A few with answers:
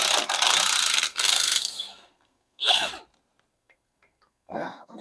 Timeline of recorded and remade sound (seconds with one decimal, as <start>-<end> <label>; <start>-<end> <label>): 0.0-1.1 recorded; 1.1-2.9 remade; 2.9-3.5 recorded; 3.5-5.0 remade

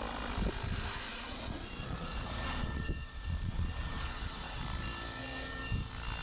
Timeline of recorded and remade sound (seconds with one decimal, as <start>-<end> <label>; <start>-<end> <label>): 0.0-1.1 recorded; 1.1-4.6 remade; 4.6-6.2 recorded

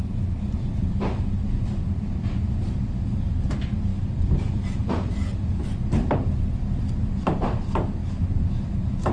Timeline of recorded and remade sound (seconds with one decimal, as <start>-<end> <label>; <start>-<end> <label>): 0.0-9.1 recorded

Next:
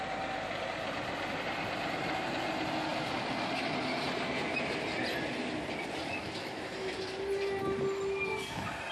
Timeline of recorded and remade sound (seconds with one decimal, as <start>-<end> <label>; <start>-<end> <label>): 0.0-6.1 recorded; 6.1-6.9 remade; 6.9-8.9 recorded